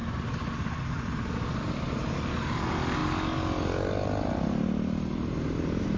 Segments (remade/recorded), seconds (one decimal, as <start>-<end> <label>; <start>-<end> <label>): 0.0-6.0 recorded